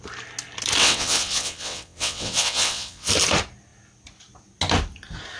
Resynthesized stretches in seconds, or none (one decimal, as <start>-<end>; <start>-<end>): 0.8-3.1